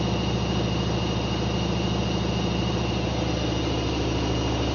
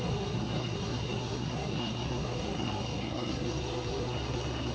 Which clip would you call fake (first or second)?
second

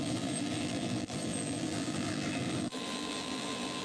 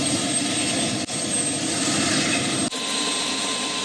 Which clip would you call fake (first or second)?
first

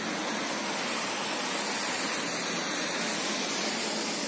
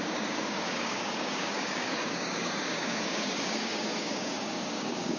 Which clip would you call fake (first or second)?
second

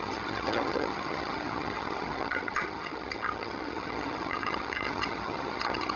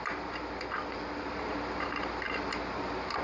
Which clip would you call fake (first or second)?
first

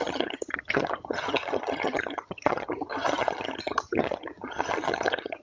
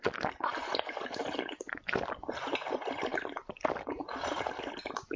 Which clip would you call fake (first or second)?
first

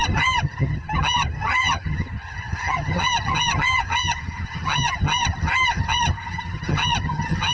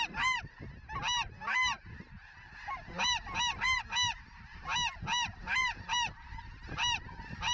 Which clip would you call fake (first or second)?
first